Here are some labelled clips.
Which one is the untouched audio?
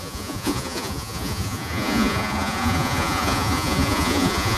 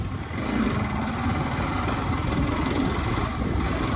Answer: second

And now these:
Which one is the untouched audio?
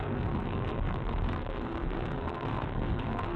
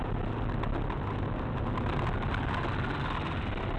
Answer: second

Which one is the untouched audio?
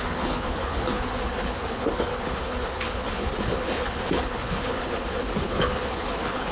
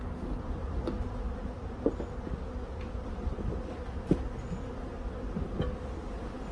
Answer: second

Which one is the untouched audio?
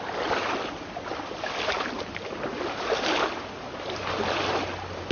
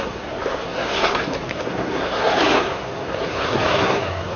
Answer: first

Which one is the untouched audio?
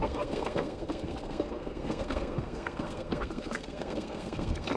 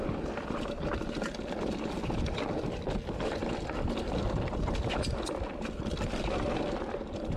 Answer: second